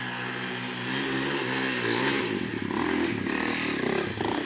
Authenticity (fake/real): real